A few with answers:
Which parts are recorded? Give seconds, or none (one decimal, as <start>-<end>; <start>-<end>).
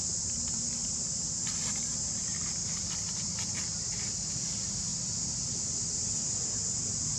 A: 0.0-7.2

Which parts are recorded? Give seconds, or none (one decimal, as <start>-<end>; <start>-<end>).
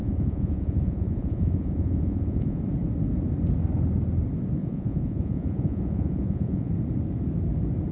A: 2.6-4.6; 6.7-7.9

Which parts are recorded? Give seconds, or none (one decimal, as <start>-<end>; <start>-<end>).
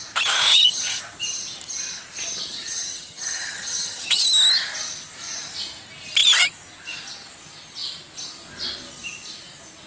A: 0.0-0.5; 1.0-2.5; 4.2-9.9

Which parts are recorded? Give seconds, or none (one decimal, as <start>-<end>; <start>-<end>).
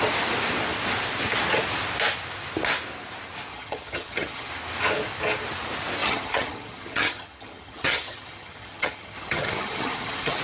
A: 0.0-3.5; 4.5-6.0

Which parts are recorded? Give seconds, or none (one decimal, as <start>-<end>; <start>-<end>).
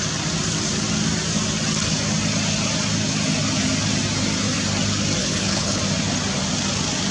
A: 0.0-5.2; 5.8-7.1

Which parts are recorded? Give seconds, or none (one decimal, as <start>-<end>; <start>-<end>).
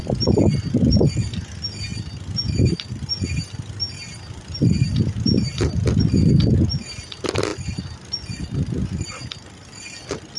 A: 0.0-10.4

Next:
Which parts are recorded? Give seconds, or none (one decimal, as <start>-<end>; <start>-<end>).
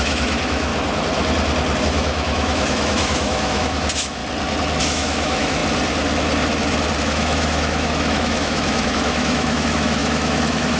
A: 0.7-1.8; 4.2-4.8; 5.6-7.0